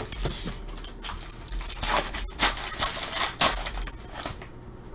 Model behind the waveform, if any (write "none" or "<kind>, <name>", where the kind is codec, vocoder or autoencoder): none